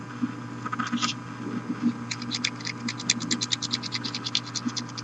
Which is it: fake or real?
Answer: real